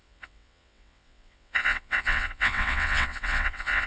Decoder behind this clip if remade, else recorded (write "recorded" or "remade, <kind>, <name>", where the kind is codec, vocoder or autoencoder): remade, vocoder, WaveNeXt